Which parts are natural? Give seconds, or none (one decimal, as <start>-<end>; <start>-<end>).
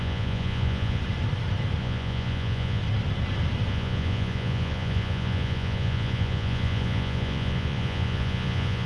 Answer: 1.0-1.8; 2.8-3.7